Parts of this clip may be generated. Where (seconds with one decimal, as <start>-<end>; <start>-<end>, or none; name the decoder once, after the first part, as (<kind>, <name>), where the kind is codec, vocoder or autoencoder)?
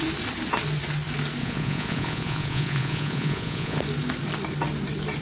1.4-3.8 (vocoder, Vocos)